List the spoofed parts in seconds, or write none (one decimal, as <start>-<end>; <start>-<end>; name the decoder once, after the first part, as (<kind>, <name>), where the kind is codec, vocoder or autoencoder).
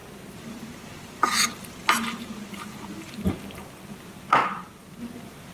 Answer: none